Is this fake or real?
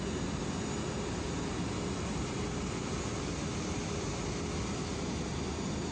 real